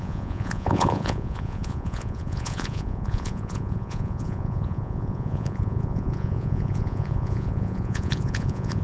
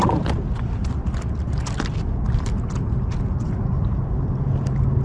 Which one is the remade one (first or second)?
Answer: first